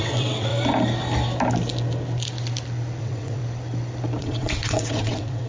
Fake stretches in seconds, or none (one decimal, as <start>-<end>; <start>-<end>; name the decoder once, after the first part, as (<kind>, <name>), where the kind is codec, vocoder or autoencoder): 0.0-0.5 (vocoder, WaveNeXt); 3.0-3.4; 4.2-5.5